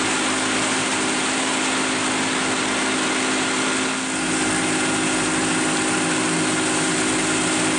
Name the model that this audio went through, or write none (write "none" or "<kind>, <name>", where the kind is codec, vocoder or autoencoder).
none